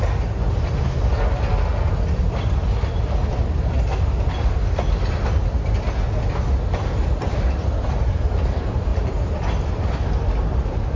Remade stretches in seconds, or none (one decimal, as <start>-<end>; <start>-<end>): 8.9-9.5